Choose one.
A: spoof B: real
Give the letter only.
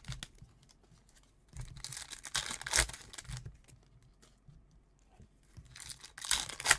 B